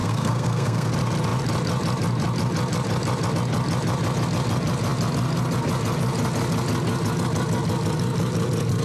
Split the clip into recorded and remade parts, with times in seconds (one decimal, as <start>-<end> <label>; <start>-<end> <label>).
0.0-0.9 remade; 0.9-8.8 recorded